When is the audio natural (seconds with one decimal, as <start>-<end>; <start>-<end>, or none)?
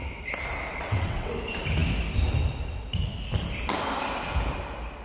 0.0-0.7; 1.3-5.0